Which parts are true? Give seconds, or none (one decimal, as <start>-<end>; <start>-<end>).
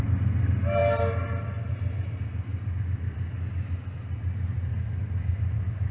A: 0.0-5.9